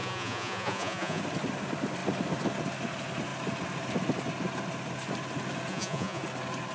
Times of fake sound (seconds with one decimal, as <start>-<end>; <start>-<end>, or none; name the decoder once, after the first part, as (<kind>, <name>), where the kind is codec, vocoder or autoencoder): 0.0-1.2 (vocoder, Vocos); 5.7-6.2